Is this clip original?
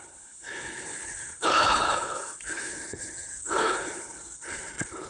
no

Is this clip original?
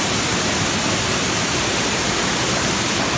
yes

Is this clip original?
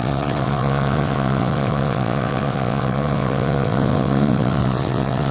no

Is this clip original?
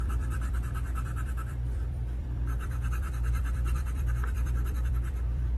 no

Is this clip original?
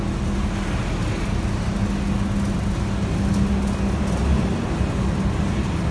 yes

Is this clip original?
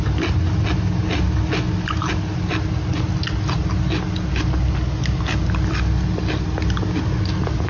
yes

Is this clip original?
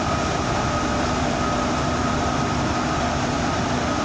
yes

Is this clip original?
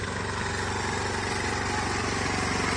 yes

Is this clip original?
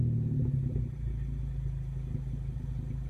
yes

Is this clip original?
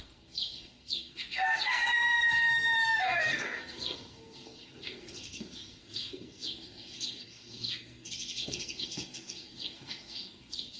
no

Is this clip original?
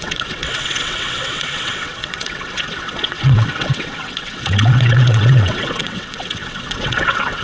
no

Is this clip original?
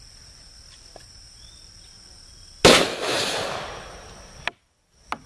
yes